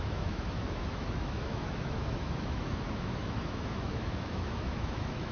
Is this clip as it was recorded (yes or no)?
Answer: no